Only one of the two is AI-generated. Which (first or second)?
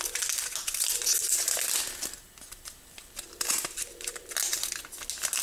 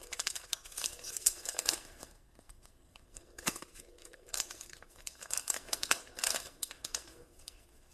second